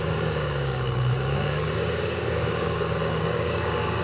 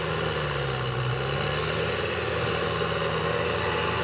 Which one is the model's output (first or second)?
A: first